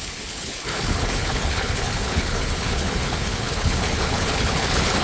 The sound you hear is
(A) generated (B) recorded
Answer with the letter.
A